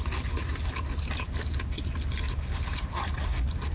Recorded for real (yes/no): yes